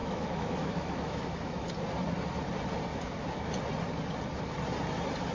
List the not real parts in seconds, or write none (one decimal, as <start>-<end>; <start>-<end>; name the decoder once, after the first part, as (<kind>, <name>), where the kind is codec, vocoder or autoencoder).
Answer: 0.0-1.7 (autoencoder, DAC-VAE); 2.9-3.5